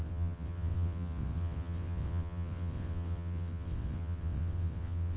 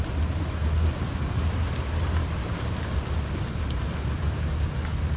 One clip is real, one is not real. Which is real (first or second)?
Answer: second